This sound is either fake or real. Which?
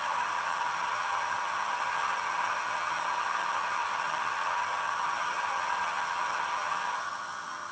fake